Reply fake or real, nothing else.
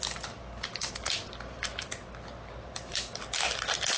real